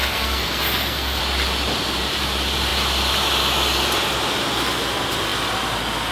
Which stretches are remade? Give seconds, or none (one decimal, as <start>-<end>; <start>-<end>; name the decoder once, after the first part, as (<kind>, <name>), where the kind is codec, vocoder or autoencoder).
0.0-1.2 (codec, SNAC)